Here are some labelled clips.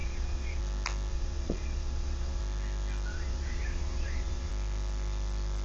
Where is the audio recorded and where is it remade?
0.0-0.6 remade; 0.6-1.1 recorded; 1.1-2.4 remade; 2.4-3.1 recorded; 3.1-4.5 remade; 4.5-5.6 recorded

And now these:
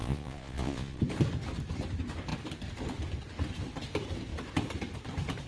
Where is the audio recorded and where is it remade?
0.0-1.0 remade; 1.0-5.5 recorded

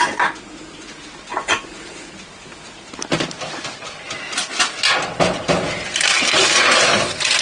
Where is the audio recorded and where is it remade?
0.0-1.3 recorded; 1.3-2.1 remade; 2.1-7.4 recorded

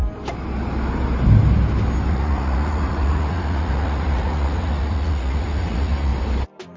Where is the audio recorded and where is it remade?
0.0-2.1 recorded; 2.1-6.1 remade; 6.1-6.8 recorded

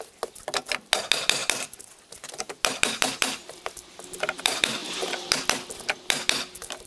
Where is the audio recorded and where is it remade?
0.0-6.9 recorded

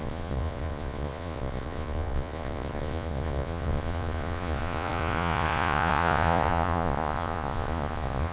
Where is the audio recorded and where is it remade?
0.0-8.3 remade